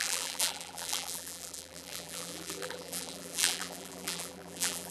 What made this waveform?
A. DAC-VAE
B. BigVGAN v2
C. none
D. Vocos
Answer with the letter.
B